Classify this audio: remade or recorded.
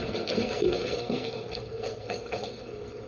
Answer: remade